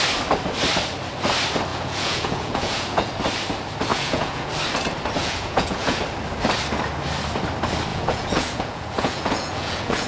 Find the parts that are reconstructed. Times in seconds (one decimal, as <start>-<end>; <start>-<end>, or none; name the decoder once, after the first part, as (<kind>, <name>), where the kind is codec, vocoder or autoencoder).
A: 1.7-3.1 (vocoder, Vocos); 3.9-4.5; 5.2-6.0; 7.9-10.1